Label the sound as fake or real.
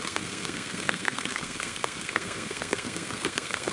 fake